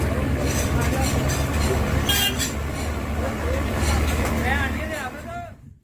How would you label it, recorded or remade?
recorded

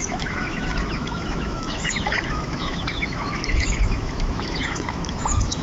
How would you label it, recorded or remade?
remade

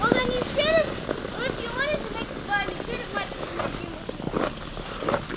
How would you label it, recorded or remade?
recorded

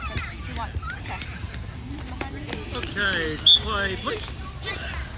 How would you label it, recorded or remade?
recorded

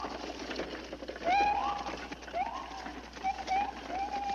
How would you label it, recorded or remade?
recorded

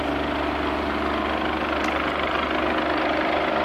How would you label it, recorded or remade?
recorded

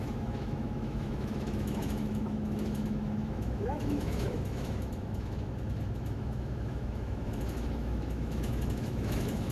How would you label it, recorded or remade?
remade